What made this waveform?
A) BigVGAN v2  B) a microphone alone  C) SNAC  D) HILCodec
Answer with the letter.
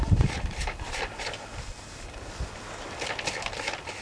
B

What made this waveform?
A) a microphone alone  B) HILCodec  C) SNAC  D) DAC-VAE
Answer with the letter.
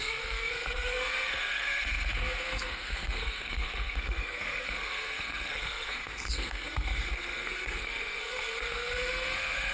C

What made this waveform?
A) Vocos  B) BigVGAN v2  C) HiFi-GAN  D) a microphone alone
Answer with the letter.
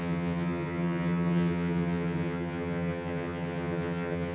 C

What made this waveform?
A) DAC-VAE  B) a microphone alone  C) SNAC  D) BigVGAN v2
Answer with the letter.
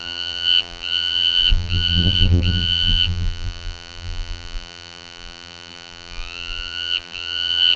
D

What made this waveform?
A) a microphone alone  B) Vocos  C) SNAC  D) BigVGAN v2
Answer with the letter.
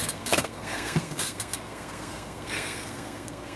C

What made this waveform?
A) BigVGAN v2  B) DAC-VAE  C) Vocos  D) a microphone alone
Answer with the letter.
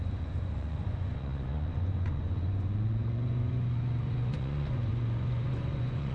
C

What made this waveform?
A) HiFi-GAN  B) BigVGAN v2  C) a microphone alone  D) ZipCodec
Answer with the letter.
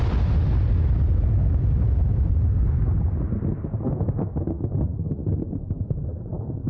C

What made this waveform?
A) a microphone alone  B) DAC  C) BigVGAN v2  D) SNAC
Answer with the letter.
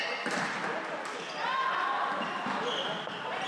A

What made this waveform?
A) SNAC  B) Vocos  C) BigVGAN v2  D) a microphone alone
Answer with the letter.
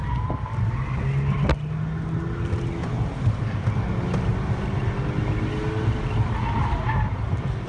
D